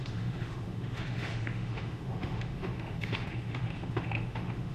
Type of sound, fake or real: fake